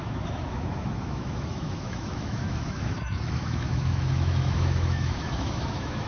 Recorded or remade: remade